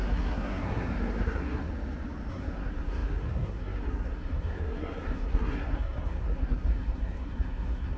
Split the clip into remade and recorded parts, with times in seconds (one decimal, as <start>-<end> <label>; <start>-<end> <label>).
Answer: 0.0-1.7 remade; 1.7-2.3 recorded; 2.3-8.0 remade